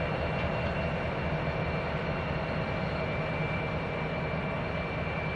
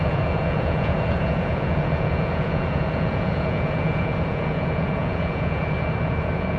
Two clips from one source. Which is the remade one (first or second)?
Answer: second